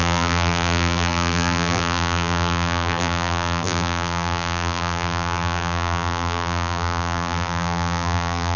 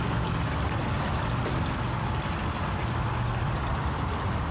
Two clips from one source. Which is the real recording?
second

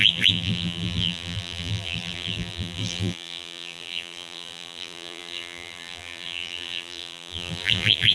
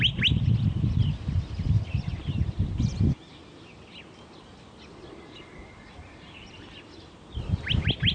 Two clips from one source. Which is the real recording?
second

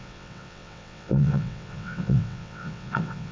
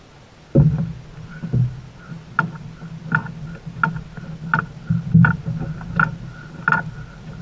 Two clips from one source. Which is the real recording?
second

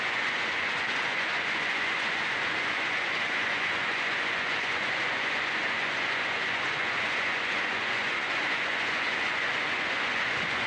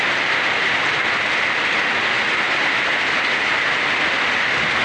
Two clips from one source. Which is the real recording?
second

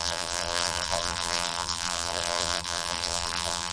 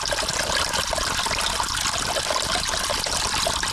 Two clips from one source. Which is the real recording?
second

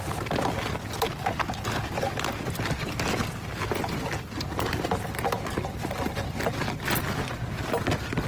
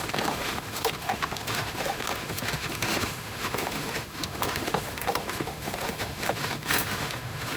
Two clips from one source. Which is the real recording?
first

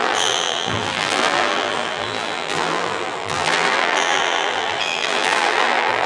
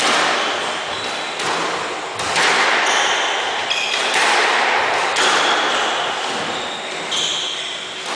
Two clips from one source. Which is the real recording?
second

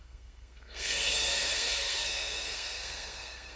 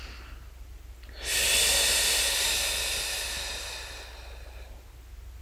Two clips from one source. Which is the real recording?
second